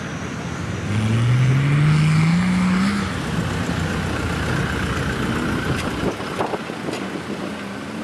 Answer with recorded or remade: recorded